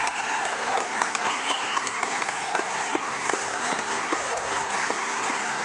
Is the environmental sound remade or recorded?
remade